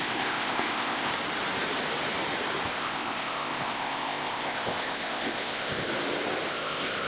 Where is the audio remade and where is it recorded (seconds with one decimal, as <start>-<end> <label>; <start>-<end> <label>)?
0.0-1.1 remade; 1.1-2.7 recorded; 2.7-5.9 remade; 5.9-6.5 recorded; 6.5-7.1 remade